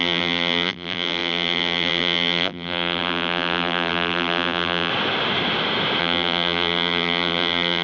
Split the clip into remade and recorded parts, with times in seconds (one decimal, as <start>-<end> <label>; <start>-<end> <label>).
0.0-4.9 remade; 4.9-6.0 recorded; 6.0-7.8 remade